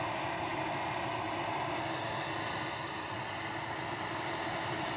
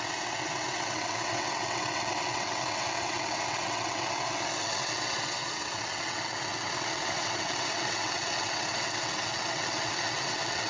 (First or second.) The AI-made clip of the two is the second